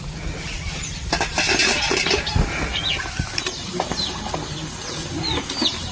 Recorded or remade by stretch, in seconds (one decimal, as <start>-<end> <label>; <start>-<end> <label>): 0.0-1.6 recorded; 1.6-2.2 remade; 2.2-2.7 recorded; 2.7-4.0 remade; 4.0-5.9 recorded